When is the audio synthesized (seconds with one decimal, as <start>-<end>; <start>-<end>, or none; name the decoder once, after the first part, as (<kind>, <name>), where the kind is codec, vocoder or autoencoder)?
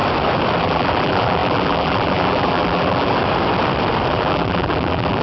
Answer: 0.6-3.2 (vocoder, BigVGAN v2); 4.1-5.2